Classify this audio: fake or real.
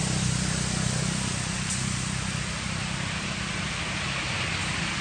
real